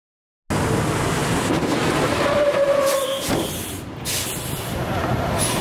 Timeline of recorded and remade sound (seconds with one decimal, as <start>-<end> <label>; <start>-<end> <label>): 0.0-1.2 recorded; 1.2-3.5 remade; 3.5-5.6 recorded